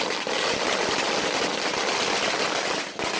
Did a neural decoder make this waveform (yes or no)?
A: no